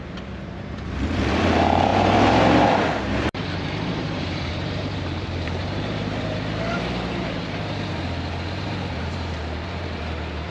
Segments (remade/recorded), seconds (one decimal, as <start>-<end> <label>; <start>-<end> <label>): 0.0-10.5 remade